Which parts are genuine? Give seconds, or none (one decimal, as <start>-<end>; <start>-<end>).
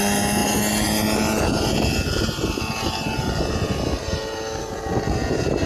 0.0-5.7